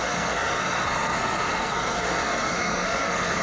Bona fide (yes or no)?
no